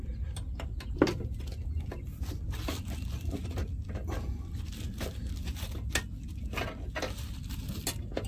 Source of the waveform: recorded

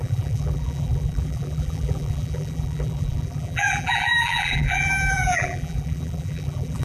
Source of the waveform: remade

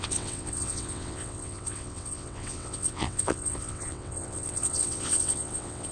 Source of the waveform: remade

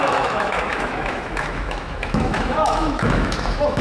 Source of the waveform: remade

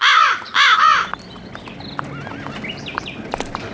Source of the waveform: recorded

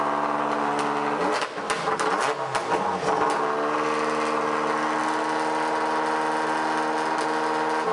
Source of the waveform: recorded